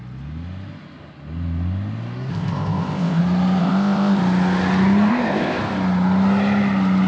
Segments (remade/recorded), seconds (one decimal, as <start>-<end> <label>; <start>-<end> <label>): 0.0-2.3 recorded; 2.3-3.2 remade; 3.2-3.6 recorded; 3.6-4.2 remade; 4.2-5.1 recorded; 5.1-5.6 remade; 5.6-7.1 recorded